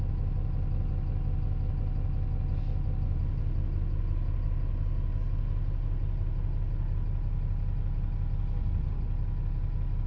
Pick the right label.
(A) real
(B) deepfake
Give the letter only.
A